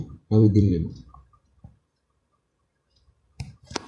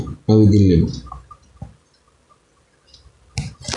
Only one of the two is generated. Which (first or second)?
first